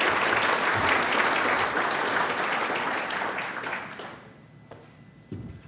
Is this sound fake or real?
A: real